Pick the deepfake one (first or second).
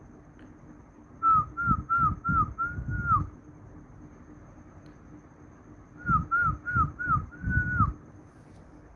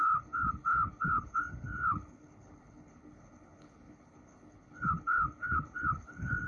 second